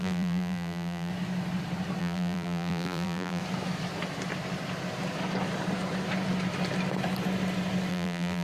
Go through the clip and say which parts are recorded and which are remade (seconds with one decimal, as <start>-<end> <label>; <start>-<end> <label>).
0.0-1.1 remade; 1.1-2.0 recorded; 2.0-3.4 remade; 3.4-7.9 recorded; 7.9-8.4 remade